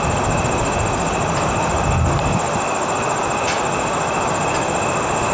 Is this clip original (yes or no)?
yes